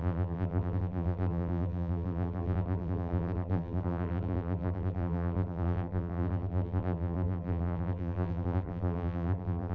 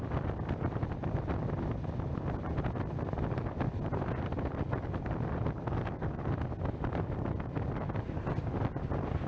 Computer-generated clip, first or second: first